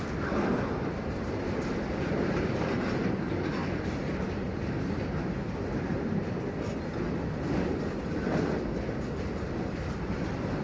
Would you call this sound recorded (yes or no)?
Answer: yes